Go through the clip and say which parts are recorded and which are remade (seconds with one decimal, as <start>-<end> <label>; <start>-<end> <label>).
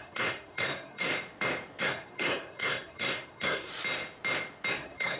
0.0-1.1 remade; 1.1-1.8 recorded; 1.8-3.7 remade; 3.7-4.7 recorded; 4.7-5.2 remade